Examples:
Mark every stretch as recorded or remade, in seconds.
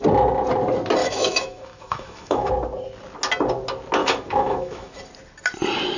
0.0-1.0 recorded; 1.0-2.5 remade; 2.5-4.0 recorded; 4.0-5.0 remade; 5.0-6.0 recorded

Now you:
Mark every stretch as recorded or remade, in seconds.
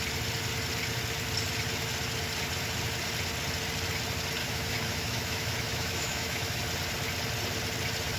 0.0-4.4 recorded; 4.4-6.6 remade; 6.6-8.2 recorded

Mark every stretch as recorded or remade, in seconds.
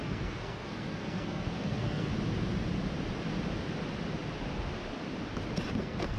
0.0-2.1 remade; 2.1-5.8 recorded; 5.8-6.2 remade